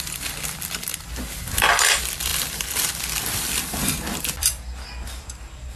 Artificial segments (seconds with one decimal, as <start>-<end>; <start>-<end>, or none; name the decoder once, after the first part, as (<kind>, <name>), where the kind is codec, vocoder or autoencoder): 0.0-0.9 (vocoder, BigVGAN v2); 1.4-5.8